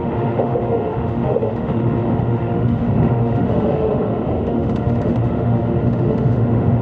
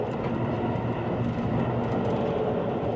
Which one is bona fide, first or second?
second